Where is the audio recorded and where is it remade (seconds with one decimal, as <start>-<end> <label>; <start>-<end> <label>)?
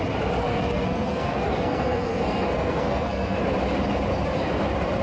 0.0-0.4 recorded; 0.4-3.4 remade; 3.4-5.0 recorded